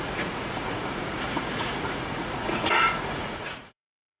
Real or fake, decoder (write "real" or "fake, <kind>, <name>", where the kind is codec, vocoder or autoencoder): fake, vocoder, Vocos